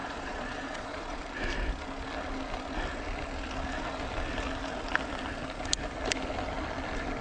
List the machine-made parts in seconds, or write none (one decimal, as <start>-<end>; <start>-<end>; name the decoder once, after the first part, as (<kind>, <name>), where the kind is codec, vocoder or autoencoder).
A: 0.0-1.2 (vocoder, Vocos)